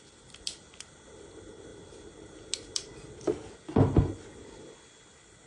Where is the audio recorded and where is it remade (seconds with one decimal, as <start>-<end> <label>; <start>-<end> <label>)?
0.0-5.5 recorded